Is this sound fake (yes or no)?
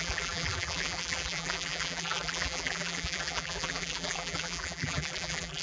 yes